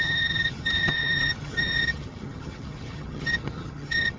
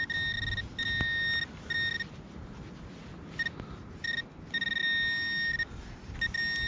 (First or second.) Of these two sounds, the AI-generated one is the first